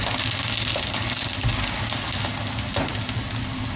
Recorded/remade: recorded